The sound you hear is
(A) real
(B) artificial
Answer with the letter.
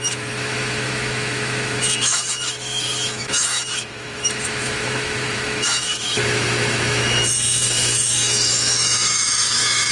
B